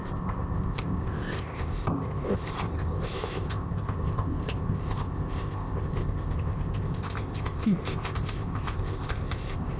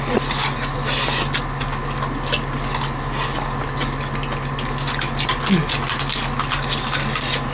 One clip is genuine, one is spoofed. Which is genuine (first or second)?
second